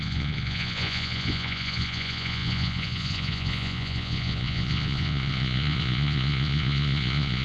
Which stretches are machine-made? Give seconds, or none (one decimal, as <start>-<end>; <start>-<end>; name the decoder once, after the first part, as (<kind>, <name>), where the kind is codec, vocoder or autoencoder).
0.0-7.4 (vocoder, Vocos)